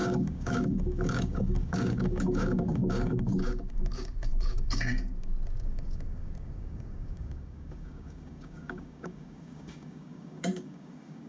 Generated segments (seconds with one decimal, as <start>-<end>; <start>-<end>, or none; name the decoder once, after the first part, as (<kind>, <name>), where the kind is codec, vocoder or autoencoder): 0.0-11.3 (codec, DAC)